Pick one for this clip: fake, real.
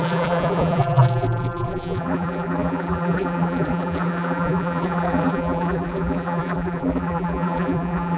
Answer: fake